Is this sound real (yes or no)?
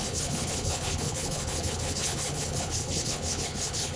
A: no